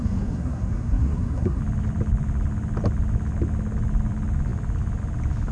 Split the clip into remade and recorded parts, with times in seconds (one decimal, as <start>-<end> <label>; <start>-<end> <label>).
0.0-1.6 remade; 1.6-5.5 recorded